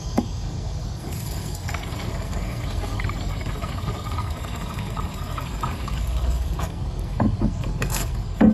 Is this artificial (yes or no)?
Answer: yes